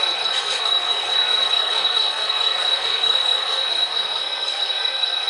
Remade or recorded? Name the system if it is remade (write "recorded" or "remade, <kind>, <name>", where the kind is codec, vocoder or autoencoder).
remade, codec, SNAC